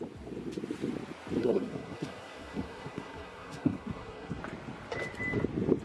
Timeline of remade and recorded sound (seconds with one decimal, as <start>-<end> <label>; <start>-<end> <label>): 0.0-1.4 recorded; 1.4-4.4 remade; 4.4-5.8 recorded